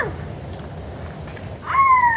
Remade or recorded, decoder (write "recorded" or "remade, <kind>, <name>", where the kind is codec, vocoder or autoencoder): recorded